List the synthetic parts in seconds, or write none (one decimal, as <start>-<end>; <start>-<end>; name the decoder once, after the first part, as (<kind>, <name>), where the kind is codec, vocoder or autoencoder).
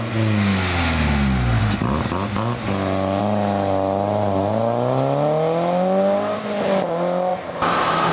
7.3-8.1 (vocoder, BigVGAN v2)